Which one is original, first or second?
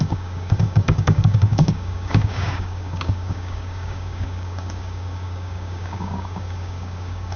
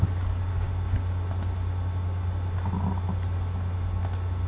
second